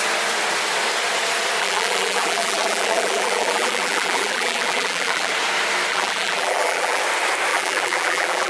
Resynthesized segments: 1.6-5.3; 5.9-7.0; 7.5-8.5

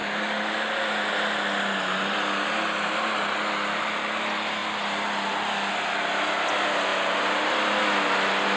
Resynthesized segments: none

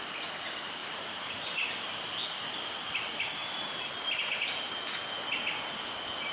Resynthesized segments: 0.8-1.8; 3.4-4.1

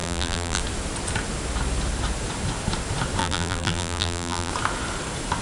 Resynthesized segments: 0.0-0.6; 3.2-4.5

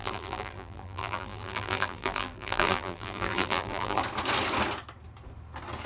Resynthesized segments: 0.0-4.0

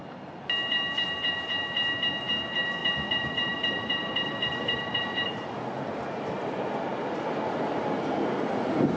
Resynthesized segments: 2.8-5.0

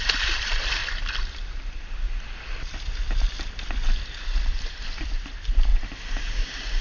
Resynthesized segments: 0.0-0.8; 4.5-5.7; 6.3-6.8

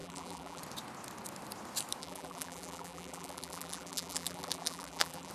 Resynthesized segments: 0.0-0.6; 2.0-5.3